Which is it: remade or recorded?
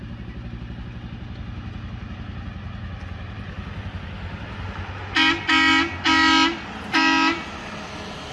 recorded